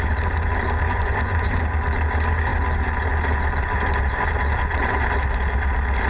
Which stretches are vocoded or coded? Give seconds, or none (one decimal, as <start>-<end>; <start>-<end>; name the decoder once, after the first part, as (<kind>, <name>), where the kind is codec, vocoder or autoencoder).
0.9-1.6 (vocoder, Vocos)